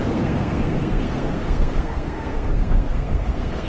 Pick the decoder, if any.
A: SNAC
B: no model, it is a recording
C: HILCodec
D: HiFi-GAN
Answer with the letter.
A